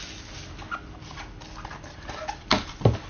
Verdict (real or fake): real